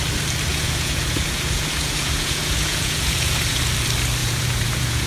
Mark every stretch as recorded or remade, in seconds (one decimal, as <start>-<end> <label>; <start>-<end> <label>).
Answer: 0.0-0.5 recorded; 0.5-3.6 remade; 3.6-4.2 recorded; 4.2-5.1 remade